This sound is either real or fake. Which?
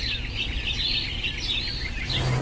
real